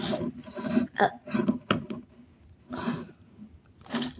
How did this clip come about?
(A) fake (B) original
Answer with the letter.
B